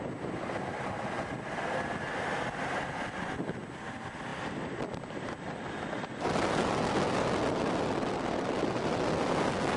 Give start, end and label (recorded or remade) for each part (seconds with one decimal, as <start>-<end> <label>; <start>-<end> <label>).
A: 0.0-9.8 recorded